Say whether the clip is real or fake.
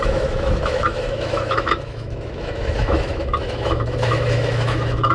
fake